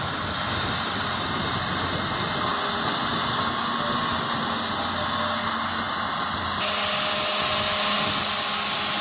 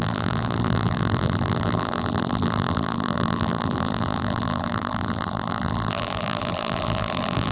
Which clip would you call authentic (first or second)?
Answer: first